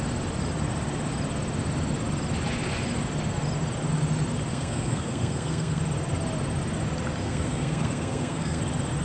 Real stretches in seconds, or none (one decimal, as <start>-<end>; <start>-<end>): 0.0-4.5; 5.8-7.2; 8.6-9.0

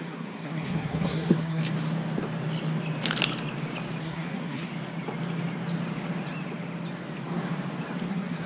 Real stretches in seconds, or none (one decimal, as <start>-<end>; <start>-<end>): 1.6-4.0; 4.7-8.1

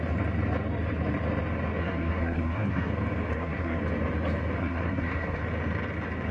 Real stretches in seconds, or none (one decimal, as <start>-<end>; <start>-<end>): 0.0-1.8; 2.9-3.3; 3.8-4.6; 5.4-6.3

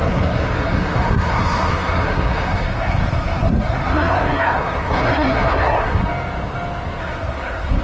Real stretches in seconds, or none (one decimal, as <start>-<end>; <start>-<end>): 6.0-7.0

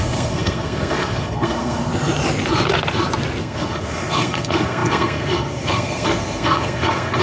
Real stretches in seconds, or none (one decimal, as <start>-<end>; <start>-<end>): 1.9-3.4